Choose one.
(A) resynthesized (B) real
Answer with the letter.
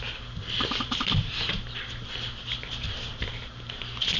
B